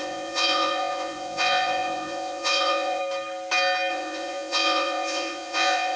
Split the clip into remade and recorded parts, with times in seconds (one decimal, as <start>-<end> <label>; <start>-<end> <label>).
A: 0.0-3.0 remade; 3.0-3.9 recorded; 3.9-6.0 remade